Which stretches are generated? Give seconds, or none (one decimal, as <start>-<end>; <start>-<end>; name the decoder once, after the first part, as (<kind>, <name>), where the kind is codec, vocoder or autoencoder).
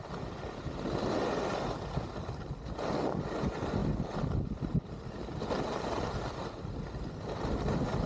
none